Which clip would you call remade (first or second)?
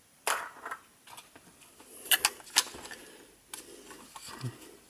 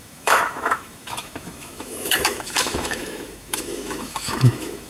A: second